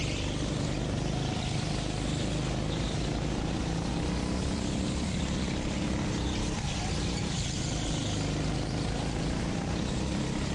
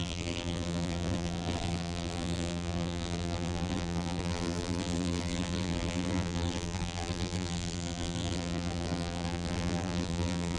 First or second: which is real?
first